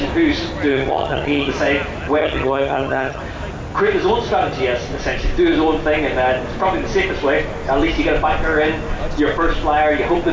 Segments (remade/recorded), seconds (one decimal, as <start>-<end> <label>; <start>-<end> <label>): 0.0-0.7 recorded; 0.7-1.5 remade; 1.5-2.2 recorded; 2.2-3.2 remade; 3.2-10.3 recorded